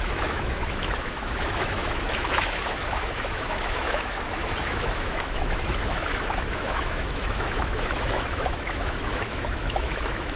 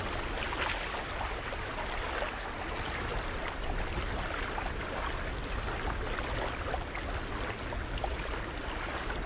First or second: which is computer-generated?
first